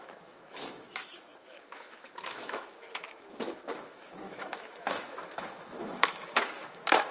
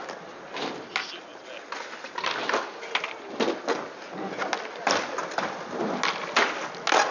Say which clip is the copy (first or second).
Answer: first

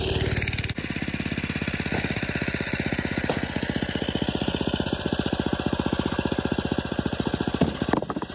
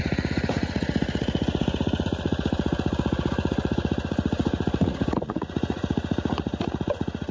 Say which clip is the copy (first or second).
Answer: second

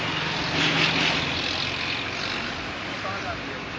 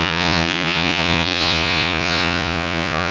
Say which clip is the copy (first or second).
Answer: second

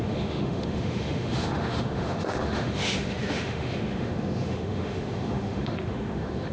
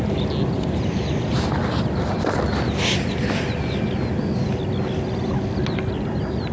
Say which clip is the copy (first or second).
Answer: first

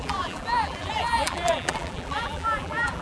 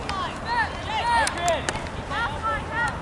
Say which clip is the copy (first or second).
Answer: first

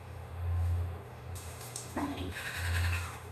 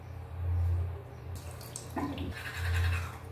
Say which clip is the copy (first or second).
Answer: first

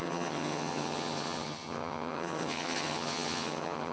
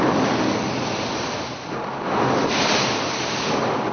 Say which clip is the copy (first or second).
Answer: first